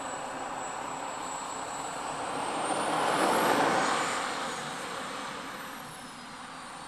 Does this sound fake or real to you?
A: real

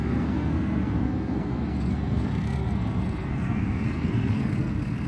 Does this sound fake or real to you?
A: fake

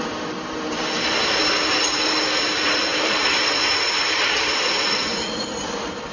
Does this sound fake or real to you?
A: fake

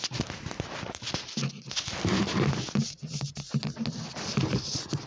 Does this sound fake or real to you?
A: real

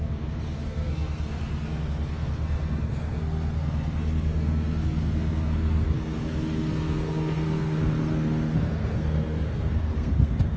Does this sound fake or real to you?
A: fake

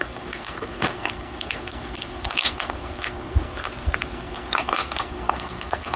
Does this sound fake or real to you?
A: fake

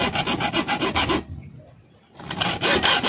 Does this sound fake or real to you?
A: real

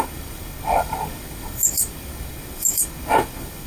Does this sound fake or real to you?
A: fake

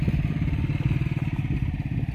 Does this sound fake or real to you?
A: real